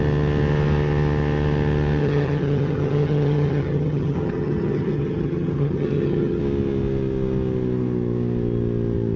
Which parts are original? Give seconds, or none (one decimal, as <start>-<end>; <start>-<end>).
0.0-2.0; 6.4-9.2